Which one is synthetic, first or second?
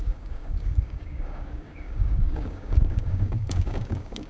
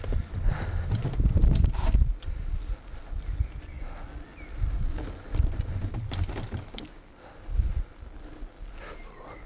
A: first